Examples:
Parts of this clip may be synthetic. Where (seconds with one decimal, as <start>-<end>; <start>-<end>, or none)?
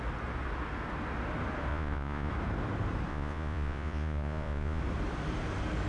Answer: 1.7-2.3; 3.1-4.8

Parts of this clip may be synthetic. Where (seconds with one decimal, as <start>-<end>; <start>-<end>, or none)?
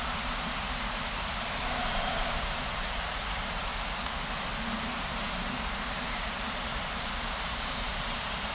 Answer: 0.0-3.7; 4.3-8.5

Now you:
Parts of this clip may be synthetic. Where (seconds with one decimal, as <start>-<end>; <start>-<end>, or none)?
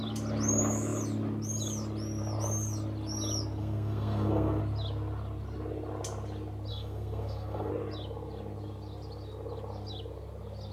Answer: 3.6-4.6; 6.7-7.7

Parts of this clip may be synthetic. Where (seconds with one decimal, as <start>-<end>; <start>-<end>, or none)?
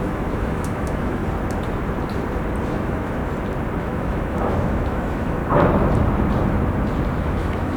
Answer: 0.0-1.2; 2.6-3.2; 3.8-5.4; 7.2-7.8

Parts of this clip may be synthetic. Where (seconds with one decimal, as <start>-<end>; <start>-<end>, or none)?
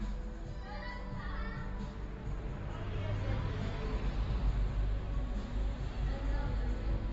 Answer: 2.2-4.5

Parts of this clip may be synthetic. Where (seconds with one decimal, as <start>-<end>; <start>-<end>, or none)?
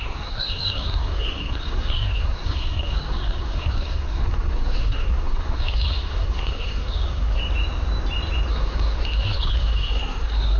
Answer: 0.0-7.4; 8.5-10.6